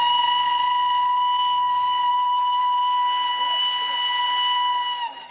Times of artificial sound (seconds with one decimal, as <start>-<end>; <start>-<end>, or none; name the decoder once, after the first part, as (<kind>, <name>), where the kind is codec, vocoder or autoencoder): 2.1-2.6 (autoencoder, DAC-VAE)